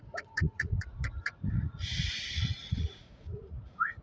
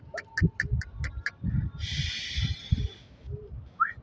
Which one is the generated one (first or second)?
first